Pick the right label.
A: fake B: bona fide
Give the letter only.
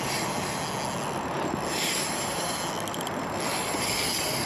B